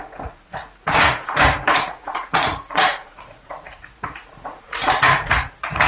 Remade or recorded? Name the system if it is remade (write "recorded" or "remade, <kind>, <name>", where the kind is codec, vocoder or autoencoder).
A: remade, vocoder, Vocos